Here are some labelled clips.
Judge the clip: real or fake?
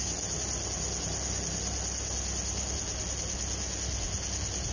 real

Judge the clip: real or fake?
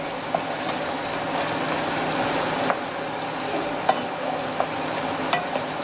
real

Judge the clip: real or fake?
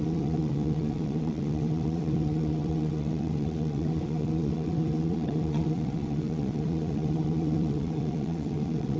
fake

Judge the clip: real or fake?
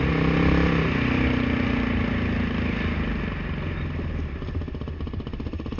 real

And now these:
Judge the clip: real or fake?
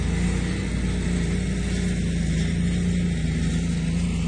real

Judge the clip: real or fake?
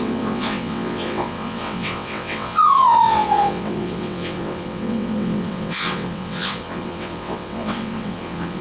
fake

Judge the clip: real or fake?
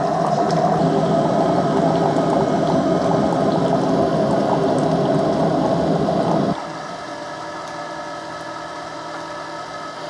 real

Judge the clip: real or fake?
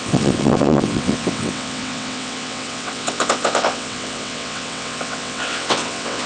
fake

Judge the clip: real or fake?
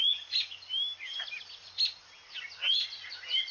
real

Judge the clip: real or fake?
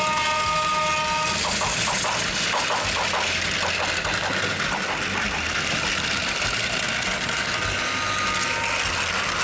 real